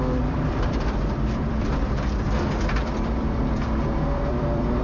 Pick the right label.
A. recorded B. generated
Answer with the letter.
B